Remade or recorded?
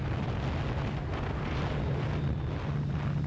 recorded